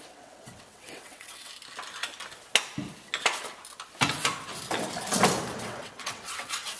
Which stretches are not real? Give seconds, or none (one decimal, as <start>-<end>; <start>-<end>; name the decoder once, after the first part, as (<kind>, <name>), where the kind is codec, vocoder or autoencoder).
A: 0.0-1.5 (vocoder, WaveNeXt); 5.6-6.8